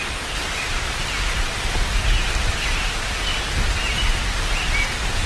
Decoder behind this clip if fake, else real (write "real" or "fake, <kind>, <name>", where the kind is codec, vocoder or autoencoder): real